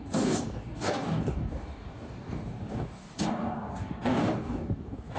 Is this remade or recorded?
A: remade